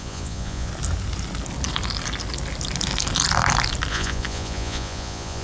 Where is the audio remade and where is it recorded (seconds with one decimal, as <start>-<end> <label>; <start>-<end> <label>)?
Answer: 0.0-0.7 remade; 0.7-3.9 recorded; 3.9-5.4 remade

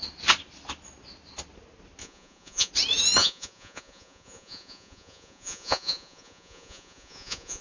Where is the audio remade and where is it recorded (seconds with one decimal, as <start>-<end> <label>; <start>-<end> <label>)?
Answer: 0.0-2.0 recorded; 2.0-2.7 remade; 2.7-3.2 recorded; 3.2-7.6 remade

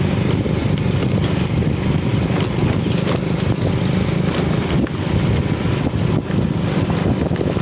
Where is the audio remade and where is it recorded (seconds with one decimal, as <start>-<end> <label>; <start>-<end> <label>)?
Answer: 0.0-7.6 recorded

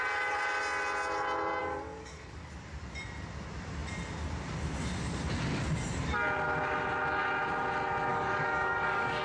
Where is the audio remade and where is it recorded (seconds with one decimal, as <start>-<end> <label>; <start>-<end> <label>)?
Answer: 0.0-1.6 recorded; 1.6-2.5 remade; 2.5-8.1 recorded; 8.1-9.2 remade

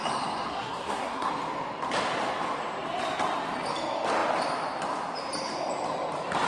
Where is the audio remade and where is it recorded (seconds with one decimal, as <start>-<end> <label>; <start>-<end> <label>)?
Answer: 0.0-0.5 recorded; 0.5-1.3 remade; 1.3-6.5 recorded

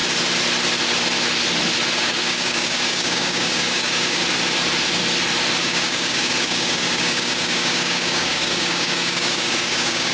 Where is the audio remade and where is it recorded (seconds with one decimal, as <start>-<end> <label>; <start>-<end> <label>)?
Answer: 0.0-2.0 recorded; 2.0-4.2 remade; 4.2-5.6 recorded; 5.6-10.1 remade

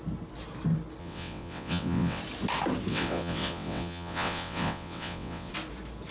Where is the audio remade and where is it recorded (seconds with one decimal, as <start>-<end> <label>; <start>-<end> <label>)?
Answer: 0.0-1.0 recorded; 1.0-2.2 remade; 2.2-2.9 recorded; 2.9-5.5 remade; 5.5-6.1 recorded